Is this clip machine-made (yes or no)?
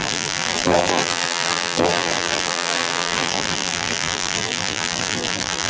yes